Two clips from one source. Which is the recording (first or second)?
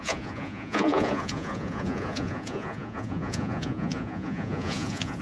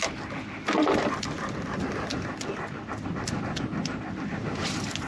second